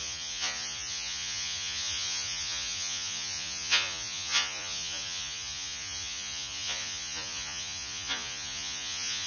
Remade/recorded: remade